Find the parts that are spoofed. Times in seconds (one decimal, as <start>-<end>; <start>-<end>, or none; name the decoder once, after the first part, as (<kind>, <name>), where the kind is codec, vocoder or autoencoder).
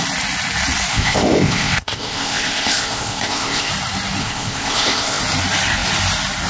0.9-3.7 (codec, ZipCodec); 4.2-5.2